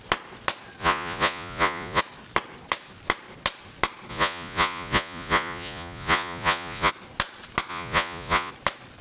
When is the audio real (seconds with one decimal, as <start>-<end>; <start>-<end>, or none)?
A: 0.0-0.8; 2.0-4.1; 6.9-7.7; 8.5-9.0